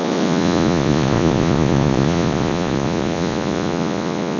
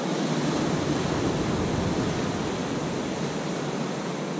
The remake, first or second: first